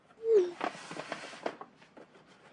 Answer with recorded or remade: recorded